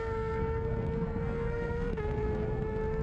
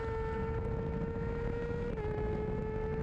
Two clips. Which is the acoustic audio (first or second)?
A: second